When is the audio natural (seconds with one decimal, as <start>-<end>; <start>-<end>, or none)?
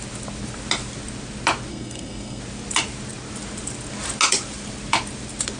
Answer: 0.0-1.7; 2.4-5.6